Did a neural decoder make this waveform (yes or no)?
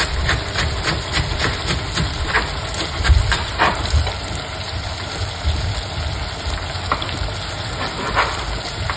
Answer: no